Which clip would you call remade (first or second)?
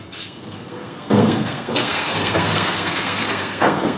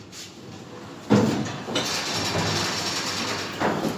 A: first